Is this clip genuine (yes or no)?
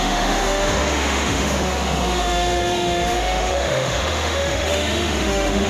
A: no